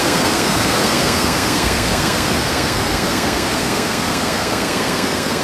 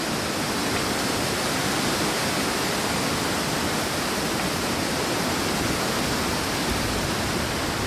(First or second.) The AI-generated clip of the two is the first